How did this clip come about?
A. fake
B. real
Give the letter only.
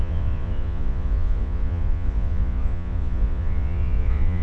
A